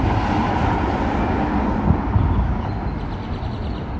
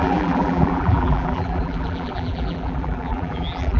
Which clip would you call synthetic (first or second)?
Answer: second